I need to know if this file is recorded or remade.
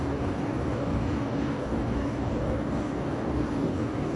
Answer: remade